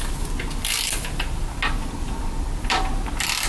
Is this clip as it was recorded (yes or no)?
yes